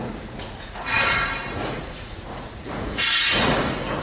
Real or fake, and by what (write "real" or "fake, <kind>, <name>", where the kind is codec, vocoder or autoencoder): fake, vocoder, Vocos